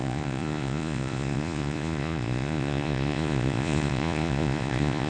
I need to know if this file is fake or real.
fake